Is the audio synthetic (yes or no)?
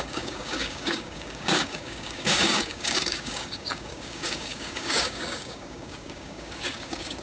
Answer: yes